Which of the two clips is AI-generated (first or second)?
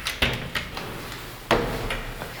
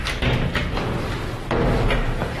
second